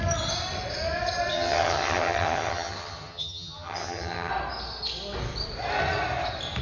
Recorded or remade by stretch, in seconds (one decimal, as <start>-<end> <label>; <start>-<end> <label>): 0.0-1.3 recorded; 1.3-4.3 remade; 4.3-6.6 recorded